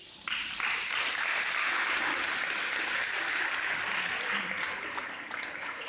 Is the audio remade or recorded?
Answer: recorded